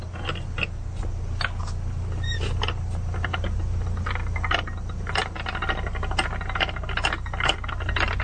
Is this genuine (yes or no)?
yes